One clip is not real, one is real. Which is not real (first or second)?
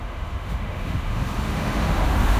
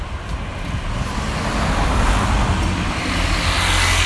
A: first